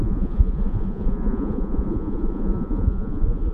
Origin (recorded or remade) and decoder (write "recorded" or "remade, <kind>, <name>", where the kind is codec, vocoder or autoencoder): remade, vocoder, Vocos